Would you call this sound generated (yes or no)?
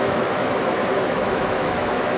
yes